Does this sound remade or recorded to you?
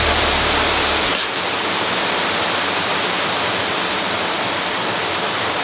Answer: recorded